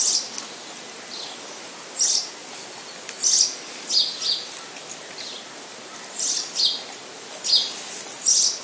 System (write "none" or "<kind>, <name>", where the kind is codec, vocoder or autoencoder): none